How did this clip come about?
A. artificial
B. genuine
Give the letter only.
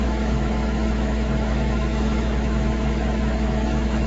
A